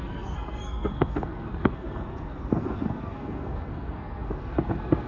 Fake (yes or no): yes